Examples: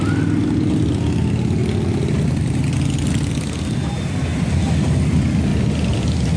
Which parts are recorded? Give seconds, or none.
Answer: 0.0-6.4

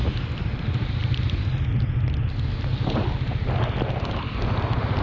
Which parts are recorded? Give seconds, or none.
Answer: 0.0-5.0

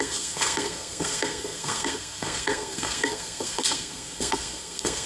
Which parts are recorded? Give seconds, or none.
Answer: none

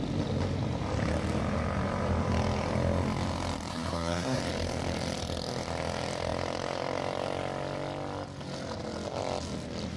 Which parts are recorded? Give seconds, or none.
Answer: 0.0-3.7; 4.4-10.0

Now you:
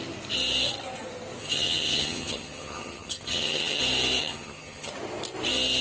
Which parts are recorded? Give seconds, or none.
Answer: 0.0-1.4; 3.8-4.2; 4.9-5.8

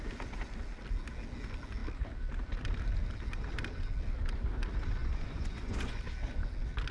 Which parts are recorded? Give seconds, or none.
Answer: 0.0-5.0; 6.0-6.9

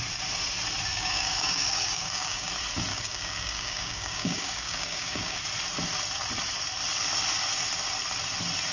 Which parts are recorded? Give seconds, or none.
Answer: 0.0-0.9; 2.5-2.9; 5.4-8.7